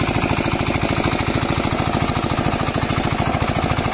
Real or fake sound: real